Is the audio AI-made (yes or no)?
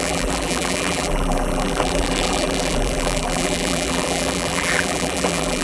yes